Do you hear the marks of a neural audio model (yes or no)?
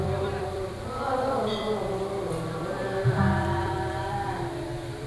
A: yes